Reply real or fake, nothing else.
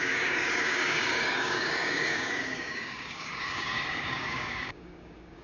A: fake